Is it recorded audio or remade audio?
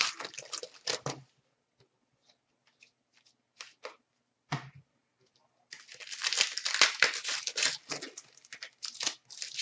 recorded